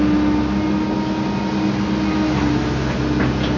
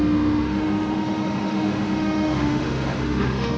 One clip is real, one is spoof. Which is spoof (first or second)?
second